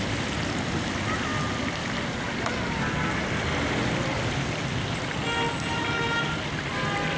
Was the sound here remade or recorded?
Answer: recorded